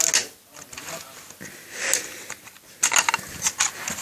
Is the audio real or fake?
real